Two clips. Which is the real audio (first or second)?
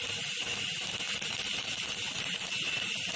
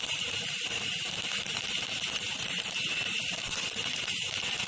first